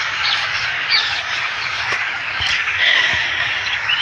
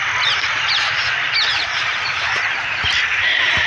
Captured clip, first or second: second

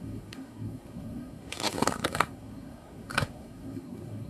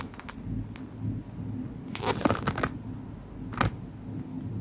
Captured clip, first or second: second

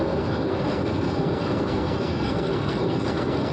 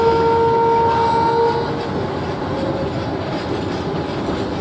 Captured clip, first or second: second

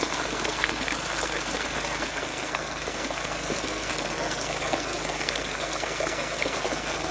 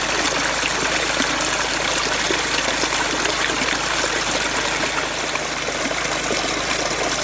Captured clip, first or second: second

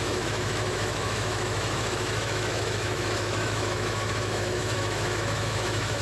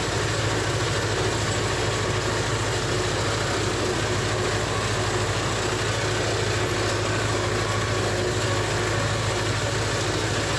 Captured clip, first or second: second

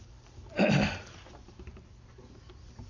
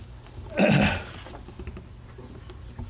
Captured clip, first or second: second